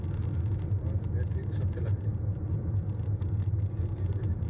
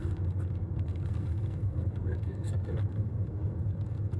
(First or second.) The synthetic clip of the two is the second